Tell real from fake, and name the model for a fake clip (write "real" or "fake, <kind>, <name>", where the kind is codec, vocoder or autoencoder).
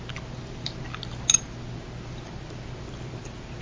real